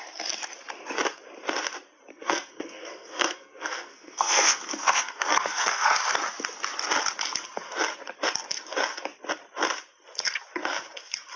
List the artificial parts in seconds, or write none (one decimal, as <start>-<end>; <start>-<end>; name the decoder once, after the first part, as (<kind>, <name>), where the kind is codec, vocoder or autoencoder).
2.1-5.9 (codec, SNAC)